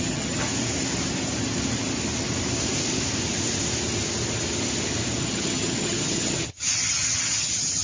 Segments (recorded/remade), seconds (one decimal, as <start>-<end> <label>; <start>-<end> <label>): 0.0-0.5 remade; 0.5-5.2 recorded; 5.2-7.8 remade